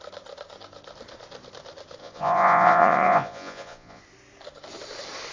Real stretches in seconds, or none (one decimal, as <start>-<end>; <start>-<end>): 0.0-2.0; 4.0-5.3